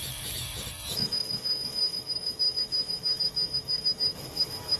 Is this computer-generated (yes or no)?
yes